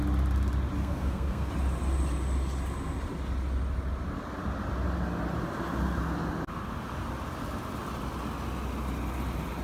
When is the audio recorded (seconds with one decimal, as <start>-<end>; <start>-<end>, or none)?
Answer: 0.0-0.8; 1.5-9.6